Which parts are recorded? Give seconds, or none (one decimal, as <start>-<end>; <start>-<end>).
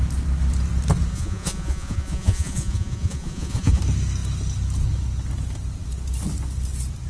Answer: 0.0-1.1; 3.8-7.1